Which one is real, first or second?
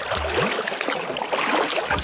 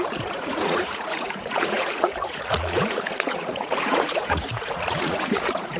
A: first